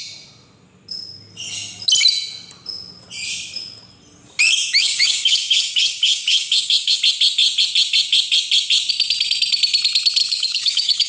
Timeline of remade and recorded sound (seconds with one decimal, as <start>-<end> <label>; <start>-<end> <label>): 0.0-4.8 recorded; 4.8-7.0 remade; 7.0-10.2 recorded; 10.2-11.1 remade